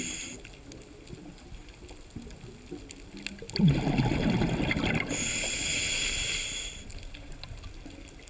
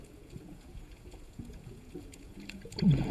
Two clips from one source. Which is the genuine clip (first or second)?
first